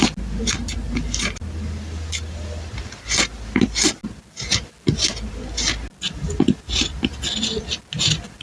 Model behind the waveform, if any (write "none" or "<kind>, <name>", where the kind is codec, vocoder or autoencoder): none